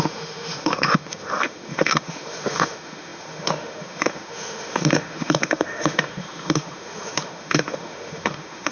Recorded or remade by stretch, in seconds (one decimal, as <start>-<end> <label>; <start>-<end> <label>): 0.0-8.7 remade